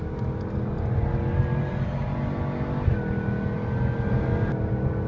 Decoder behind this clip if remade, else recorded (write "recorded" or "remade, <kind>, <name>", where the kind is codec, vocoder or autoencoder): recorded